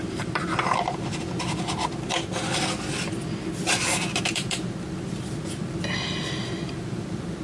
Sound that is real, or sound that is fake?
real